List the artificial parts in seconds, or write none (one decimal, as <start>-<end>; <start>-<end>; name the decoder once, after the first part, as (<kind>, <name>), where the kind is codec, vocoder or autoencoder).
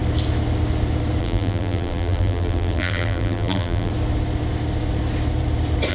1.2-3.9 (vocoder, BigVGAN v2)